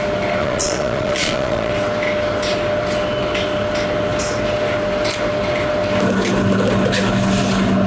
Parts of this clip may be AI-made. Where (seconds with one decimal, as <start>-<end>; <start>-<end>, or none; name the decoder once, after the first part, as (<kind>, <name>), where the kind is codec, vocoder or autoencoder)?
0.4-1.7 (vocoder, Vocos)